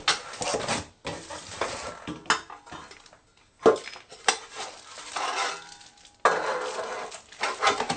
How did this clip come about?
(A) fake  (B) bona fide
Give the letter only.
B